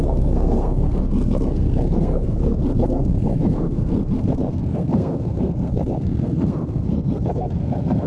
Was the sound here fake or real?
fake